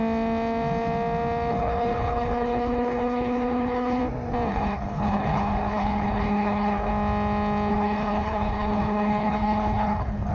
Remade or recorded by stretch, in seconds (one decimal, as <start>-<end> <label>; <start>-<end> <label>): 0.0-1.5 recorded; 1.5-4.0 remade; 4.0-4.5 recorded; 4.5-6.9 remade; 6.9-7.7 recorded; 7.7-10.3 remade